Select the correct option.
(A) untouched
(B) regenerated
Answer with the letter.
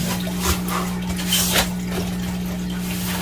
A